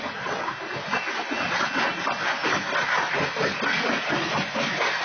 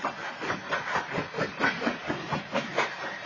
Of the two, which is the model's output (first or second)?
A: second